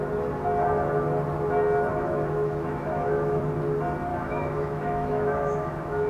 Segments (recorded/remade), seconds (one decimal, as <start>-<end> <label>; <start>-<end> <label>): 0.0-1.9 recorded; 1.9-3.4 remade; 3.4-4.1 recorded; 4.1-6.1 remade